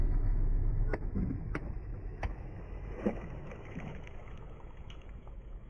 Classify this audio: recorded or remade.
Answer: remade